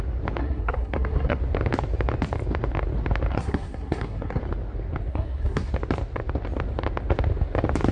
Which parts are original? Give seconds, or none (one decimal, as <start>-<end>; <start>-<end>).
0.0-0.4; 1.4-3.3; 4.4-5.1; 5.7-7.9